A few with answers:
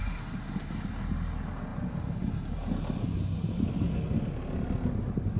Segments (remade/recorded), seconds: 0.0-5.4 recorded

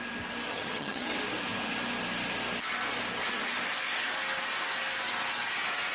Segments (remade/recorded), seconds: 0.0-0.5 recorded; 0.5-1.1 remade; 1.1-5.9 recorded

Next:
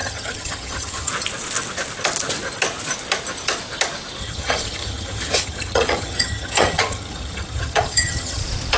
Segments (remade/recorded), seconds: 0.0-1.1 remade; 1.1-4.2 recorded; 4.2-8.4 remade; 8.4-8.8 recorded